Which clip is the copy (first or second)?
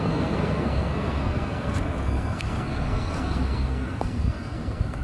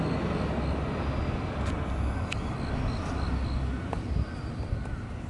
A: first